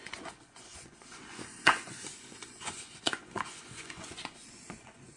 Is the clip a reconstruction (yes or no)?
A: yes